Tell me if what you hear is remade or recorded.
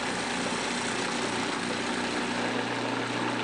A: recorded